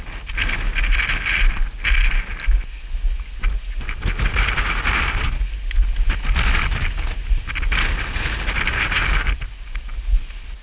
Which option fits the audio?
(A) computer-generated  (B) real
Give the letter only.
B